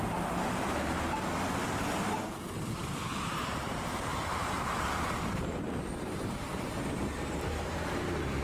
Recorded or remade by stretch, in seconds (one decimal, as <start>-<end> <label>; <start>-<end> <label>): 0.0-1.9 remade; 1.9-2.6 recorded; 2.6-8.4 remade